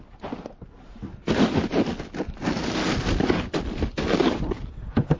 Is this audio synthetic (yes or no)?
no